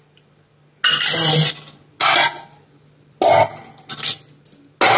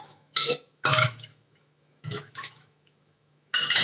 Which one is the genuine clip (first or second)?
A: first